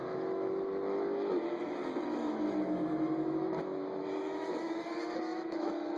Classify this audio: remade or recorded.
remade